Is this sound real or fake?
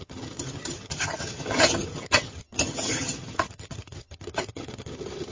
fake